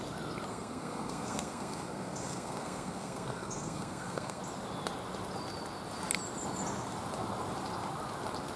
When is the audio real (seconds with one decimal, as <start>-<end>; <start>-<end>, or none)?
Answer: 0.0-0.5; 4.4-8.6

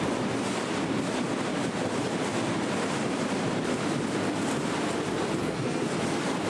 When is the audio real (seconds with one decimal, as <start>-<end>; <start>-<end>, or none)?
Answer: 0.0-5.4; 6.0-6.5

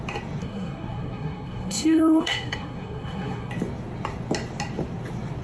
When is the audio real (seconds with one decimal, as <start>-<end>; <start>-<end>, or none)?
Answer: 0.0-0.4; 3.5-5.4

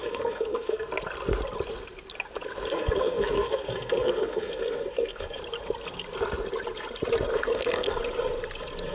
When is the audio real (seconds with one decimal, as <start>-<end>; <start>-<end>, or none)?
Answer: 0.9-2.8; 5.4-7.3; 8.0-8.9

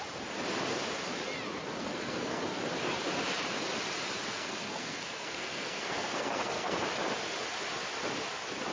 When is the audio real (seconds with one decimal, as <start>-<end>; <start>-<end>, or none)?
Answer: 0.0-1.8; 2.4-4.3; 6.8-8.7

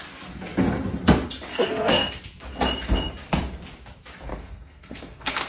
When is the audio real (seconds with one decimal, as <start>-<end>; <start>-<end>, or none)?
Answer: 0.0-1.5; 2.1-4.3